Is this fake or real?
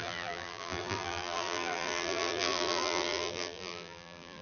fake